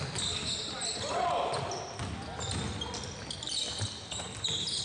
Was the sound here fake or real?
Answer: real